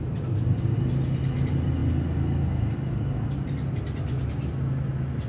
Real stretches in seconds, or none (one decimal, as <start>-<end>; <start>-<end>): 0.0-5.3